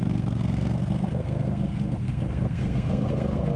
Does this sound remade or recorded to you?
remade